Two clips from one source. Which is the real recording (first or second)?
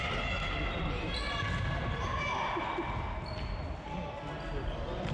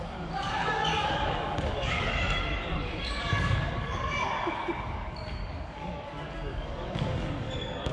first